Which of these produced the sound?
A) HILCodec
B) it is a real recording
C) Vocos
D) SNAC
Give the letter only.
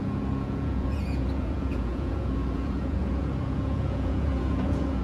C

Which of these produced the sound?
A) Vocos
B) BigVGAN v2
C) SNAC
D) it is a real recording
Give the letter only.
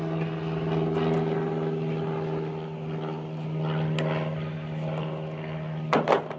D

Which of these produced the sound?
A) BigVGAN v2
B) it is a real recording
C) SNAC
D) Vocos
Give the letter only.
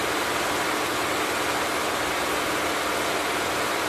B